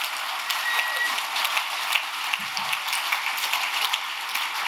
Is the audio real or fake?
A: real